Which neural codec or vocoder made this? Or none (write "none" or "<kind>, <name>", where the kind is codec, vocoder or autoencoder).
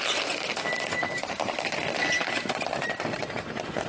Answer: none